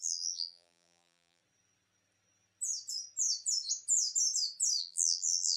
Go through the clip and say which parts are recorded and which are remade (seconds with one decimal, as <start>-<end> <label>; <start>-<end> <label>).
0.0-1.4 remade; 1.4-4.8 recorded; 4.8-5.6 remade